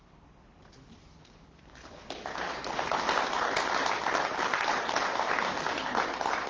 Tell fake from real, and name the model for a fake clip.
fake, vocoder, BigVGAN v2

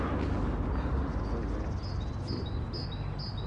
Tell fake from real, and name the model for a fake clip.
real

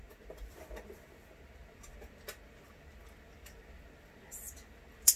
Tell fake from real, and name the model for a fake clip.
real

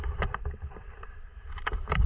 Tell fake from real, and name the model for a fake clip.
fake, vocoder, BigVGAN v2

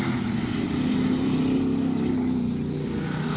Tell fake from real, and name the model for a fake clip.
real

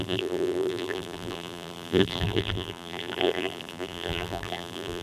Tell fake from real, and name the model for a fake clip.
fake, vocoder, BigVGAN v2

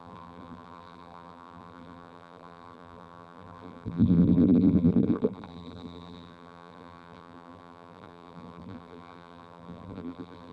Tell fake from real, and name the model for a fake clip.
fake, vocoder, BigVGAN v2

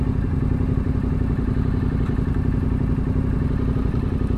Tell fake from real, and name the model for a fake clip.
real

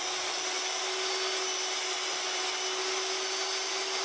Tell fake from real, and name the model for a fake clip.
real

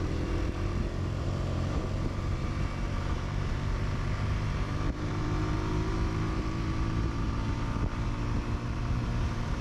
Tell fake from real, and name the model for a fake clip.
fake, vocoder, BigVGAN v2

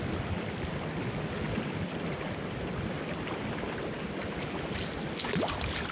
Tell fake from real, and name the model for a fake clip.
real